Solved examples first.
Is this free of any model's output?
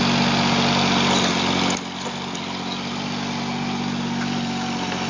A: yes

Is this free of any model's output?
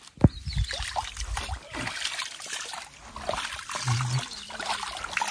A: yes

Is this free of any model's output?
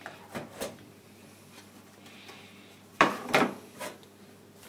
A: no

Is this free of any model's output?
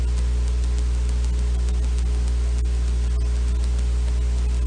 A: yes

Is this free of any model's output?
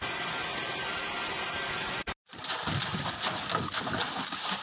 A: yes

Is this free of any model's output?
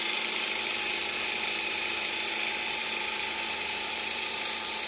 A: no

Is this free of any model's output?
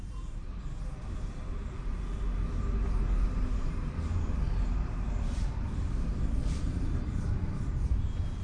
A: no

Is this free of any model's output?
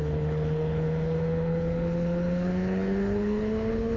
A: no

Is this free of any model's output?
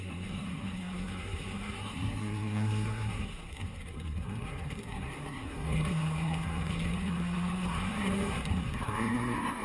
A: no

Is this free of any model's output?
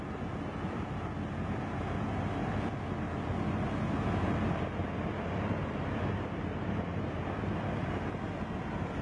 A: yes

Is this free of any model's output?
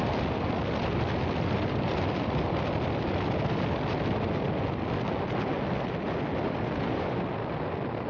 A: yes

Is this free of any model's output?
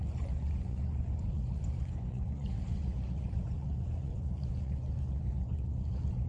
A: no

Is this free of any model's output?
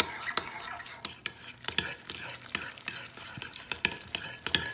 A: yes